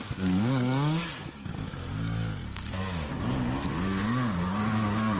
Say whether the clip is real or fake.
fake